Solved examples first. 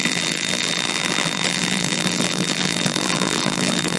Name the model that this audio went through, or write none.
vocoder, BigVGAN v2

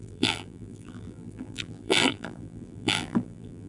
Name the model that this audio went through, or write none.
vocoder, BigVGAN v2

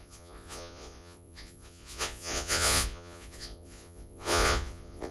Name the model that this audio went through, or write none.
vocoder, Vocos